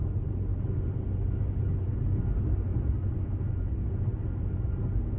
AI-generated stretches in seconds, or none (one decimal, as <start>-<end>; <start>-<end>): none